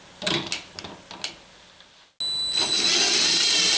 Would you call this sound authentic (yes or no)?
yes